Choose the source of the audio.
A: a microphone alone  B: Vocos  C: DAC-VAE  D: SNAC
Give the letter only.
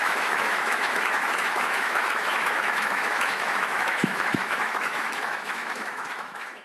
C